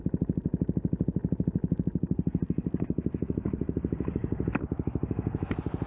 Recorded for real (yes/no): yes